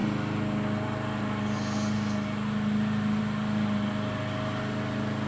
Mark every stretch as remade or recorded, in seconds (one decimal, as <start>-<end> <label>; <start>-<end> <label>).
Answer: 0.0-5.3 recorded